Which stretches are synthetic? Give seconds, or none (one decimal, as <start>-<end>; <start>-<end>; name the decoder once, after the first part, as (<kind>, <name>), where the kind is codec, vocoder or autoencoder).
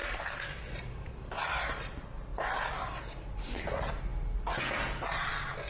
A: 0.0-1.7 (vocoder, BigVGAN v2); 2.3-2.9